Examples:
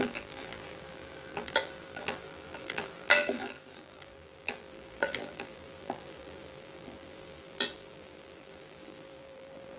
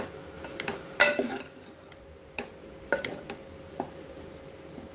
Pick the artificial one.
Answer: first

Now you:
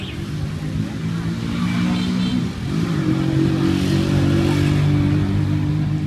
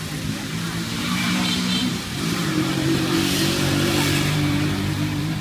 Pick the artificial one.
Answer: second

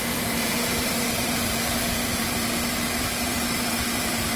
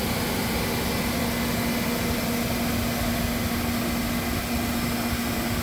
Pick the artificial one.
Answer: first